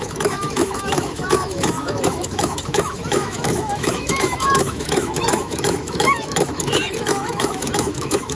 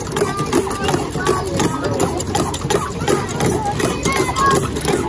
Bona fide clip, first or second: second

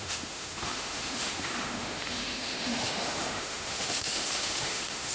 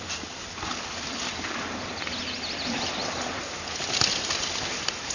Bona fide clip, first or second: second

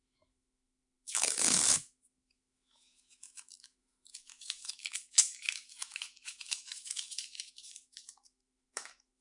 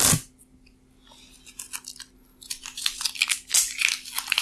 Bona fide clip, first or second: second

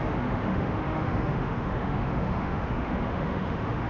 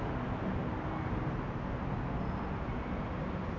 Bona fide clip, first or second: second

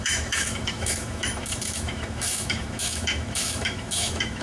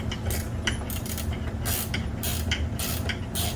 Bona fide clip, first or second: second